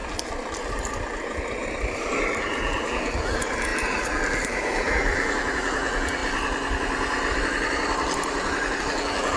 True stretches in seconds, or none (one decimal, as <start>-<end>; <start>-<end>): 0.0-2.4; 6.2-8.8